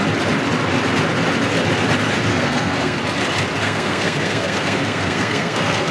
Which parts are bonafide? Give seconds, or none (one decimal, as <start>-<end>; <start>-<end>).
0.0-2.3; 3.0-3.6